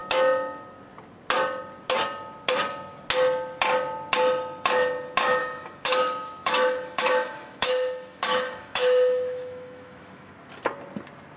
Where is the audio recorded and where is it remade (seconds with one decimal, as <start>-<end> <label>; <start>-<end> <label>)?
0.0-5.4 recorded; 5.4-10.3 remade; 10.3-11.4 recorded